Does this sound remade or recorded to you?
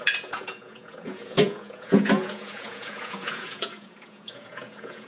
remade